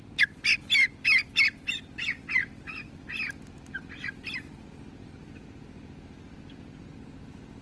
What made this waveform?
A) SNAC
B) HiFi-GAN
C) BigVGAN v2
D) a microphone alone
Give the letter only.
D